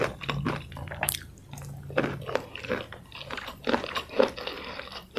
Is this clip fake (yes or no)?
yes